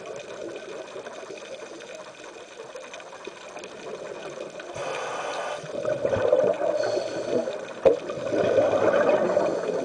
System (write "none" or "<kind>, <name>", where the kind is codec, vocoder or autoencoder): none